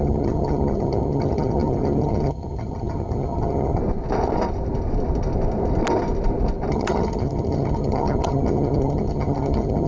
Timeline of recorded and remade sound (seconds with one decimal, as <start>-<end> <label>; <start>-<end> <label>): 0.0-3.8 remade; 3.8-6.7 recorded; 6.7-9.9 remade